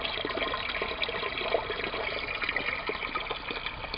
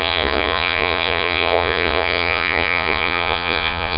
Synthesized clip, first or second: second